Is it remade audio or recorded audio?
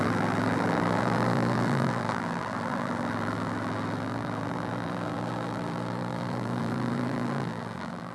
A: remade